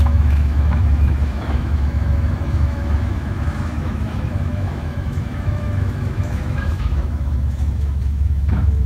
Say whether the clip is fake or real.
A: fake